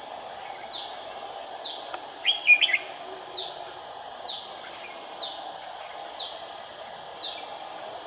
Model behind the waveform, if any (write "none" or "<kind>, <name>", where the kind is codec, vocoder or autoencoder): none